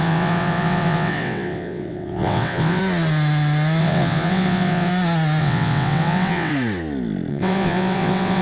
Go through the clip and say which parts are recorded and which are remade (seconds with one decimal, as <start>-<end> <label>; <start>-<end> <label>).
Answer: 0.0-2.8 remade; 2.8-3.8 recorded; 3.8-4.9 remade; 4.9-5.4 recorded; 5.4-6.5 remade; 6.5-7.3 recorded; 7.3-8.4 remade